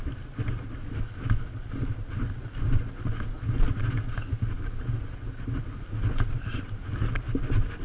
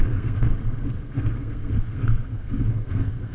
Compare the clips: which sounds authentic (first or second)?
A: first